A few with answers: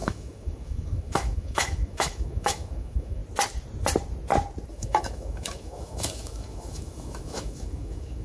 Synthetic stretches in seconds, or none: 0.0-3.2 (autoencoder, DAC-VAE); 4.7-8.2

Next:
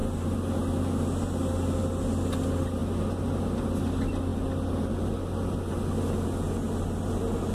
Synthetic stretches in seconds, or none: none

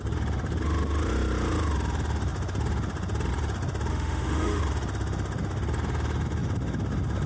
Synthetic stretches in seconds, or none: 3.9-4.6 (autoencoder, DAC-VAE)

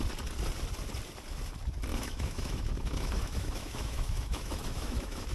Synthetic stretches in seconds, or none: 1.9-5.3 (autoencoder, DAC-VAE)

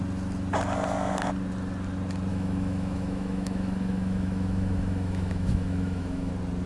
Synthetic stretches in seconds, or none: 2.3-6.3 (autoencoder, DAC-VAE)

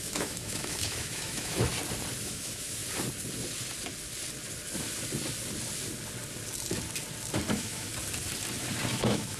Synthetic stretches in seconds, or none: 0.0-1.7 (autoencoder, DAC-VAE); 2.2-2.8; 7.5-7.9; 8.9-9.4

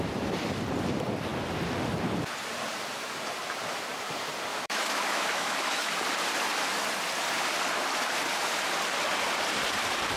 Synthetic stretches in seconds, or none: 4.5-5.9 (autoencoder, DAC-VAE)